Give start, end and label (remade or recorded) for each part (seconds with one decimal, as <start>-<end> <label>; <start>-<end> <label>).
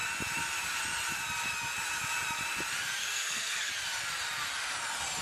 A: 0.0-3.0 recorded; 3.0-3.7 remade; 3.7-5.2 recorded